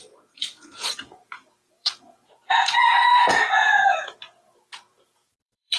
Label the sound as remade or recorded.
remade